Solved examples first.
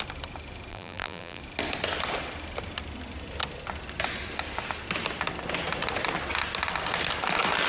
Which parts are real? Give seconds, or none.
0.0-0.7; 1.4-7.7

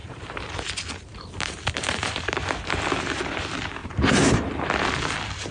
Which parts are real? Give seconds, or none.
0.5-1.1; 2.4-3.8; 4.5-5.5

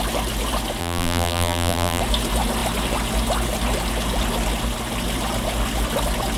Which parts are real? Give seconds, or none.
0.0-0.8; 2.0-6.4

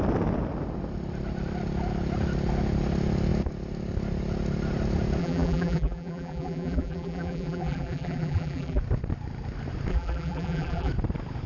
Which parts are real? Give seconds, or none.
0.0-5.2; 8.8-9.9; 10.9-11.5

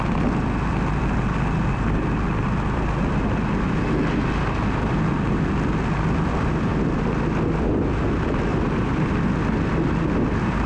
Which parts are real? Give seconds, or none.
0.0-8.5; 9.1-10.7